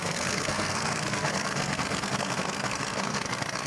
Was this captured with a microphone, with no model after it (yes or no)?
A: no